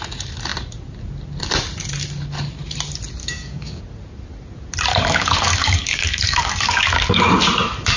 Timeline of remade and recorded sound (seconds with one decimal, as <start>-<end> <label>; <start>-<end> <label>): 0.0-3.2 recorded; 3.2-3.8 remade; 3.8-4.9 recorded; 4.9-7.3 remade; 7.3-8.0 recorded